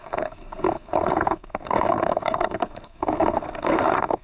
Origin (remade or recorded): remade